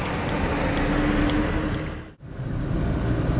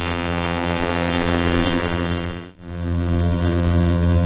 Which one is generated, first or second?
second